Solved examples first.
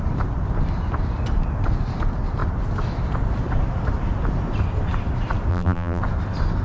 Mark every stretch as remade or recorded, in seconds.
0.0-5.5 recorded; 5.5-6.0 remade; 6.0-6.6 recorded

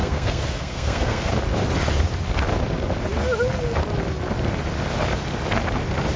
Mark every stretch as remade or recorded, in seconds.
0.0-1.3 remade; 1.3-6.2 recorded

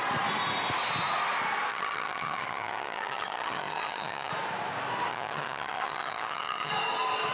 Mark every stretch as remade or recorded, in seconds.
0.0-1.7 recorded; 1.7-4.3 remade; 4.3-5.1 recorded; 5.1-6.7 remade; 6.7-7.3 recorded

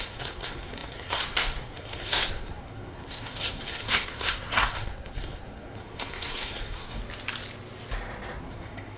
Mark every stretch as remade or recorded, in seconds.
0.0-7.0 remade; 7.0-8.4 recorded; 8.4-9.0 remade